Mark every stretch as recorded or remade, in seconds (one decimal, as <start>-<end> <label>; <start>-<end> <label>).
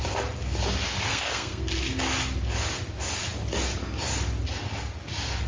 0.0-1.1 recorded; 1.1-1.6 remade; 1.6-5.5 recorded